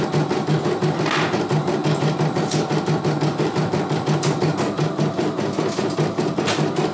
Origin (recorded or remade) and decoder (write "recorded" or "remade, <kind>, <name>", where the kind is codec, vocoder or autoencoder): recorded